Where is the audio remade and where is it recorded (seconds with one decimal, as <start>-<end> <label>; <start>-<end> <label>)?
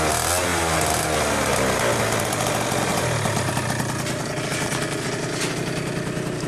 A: 0.0-2.9 recorded; 2.9-3.5 remade; 3.5-6.5 recorded